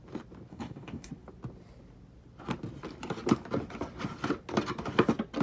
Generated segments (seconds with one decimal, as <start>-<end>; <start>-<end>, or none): 0.5-1.1